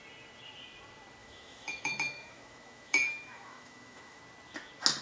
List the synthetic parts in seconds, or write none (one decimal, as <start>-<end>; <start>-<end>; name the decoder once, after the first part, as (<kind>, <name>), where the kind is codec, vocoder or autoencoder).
1.2-4.2 (autoencoder, DAC-VAE)